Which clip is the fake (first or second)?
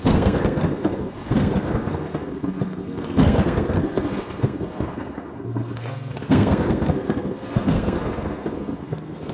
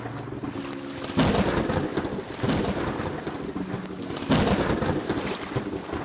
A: first